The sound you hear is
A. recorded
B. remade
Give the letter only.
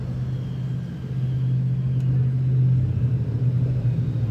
A